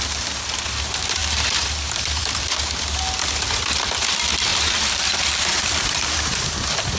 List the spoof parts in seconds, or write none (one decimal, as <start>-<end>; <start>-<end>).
1.2-2.2; 4.5-7.0

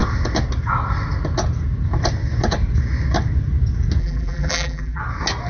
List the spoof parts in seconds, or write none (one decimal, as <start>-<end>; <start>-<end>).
4.0-5.0

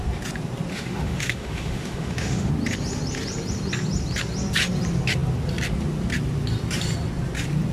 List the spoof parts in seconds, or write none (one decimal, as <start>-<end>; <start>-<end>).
0.7-2.5

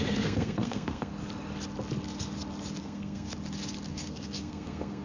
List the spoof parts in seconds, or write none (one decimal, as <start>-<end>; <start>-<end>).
0.0-1.1; 2.8-3.3; 3.9-5.0